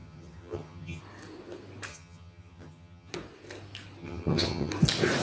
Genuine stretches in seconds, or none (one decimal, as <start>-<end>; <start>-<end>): 1.0-1.9; 3.1-4.0; 4.7-5.2